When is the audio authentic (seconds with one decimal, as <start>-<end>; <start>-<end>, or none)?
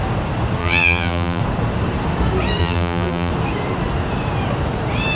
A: 0.0-0.6; 1.4-2.6; 3.3-5.2